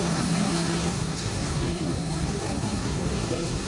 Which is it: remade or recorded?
remade